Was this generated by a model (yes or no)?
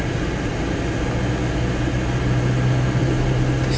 no